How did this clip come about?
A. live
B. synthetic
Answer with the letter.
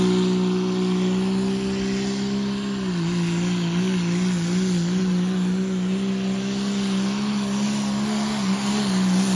A